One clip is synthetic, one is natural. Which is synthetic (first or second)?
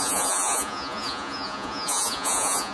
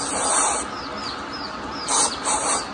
first